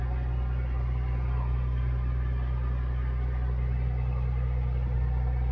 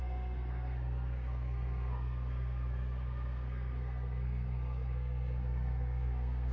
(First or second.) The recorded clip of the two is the first